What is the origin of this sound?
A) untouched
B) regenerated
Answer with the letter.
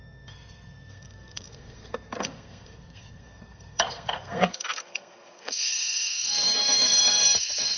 B